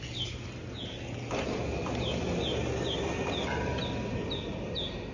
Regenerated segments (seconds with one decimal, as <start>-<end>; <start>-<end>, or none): none